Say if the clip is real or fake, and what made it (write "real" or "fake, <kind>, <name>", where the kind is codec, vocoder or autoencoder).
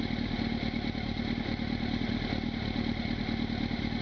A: real